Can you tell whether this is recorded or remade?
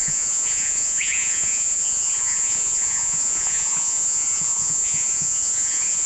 remade